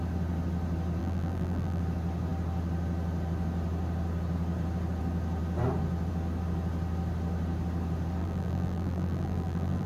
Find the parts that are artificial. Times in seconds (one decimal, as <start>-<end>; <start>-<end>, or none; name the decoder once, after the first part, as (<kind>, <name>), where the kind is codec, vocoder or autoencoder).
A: 1.0-1.8 (vocoder, BigVGAN v2); 8.2-9.9